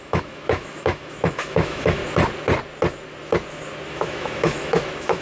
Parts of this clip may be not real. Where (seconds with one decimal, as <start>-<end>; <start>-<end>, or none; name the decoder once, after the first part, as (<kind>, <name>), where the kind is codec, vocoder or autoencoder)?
0.0-2.0 (autoencoder, DAC-VAE); 3.9-5.2